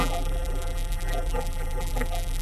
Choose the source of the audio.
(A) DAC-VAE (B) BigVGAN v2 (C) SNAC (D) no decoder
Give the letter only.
B